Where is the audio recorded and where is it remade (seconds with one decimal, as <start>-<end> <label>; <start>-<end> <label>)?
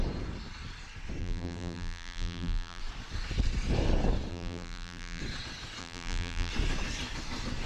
0.0-1.2 recorded; 1.2-2.8 remade; 2.8-4.3 recorded; 4.3-5.2 remade; 5.2-5.8 recorded; 5.8-6.5 remade; 6.5-7.7 recorded